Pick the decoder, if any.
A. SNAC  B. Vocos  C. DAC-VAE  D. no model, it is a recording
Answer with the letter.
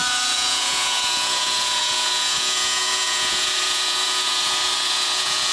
B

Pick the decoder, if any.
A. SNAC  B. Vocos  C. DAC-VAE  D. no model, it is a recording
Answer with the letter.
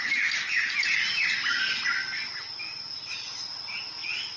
D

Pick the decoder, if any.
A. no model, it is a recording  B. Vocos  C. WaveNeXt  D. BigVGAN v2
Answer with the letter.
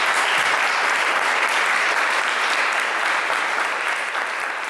A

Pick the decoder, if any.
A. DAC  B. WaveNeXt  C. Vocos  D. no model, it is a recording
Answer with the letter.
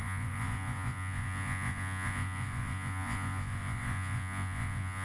C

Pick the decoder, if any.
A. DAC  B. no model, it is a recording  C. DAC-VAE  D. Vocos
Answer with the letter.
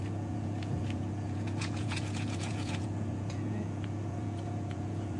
D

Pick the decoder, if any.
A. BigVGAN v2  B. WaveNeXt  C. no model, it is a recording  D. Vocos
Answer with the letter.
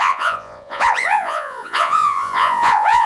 D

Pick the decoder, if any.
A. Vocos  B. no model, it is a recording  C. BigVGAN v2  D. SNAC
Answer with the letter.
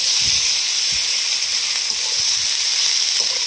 B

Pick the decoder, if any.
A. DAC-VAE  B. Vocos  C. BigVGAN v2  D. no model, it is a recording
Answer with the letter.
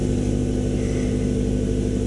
D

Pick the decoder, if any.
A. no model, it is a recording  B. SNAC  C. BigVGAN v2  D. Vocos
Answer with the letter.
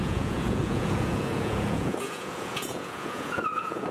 D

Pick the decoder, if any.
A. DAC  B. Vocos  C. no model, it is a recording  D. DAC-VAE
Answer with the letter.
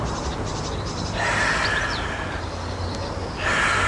C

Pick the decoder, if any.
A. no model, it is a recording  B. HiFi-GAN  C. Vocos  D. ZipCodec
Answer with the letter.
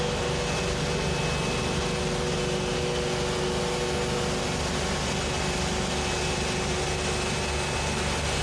A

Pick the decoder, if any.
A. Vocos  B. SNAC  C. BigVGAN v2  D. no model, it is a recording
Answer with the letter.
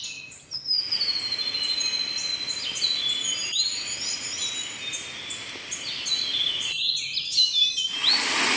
D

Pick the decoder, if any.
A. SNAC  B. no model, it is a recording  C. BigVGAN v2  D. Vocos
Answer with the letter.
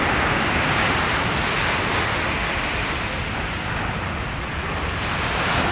B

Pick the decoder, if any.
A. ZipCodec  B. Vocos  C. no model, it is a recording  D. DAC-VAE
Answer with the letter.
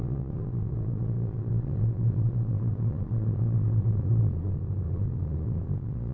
B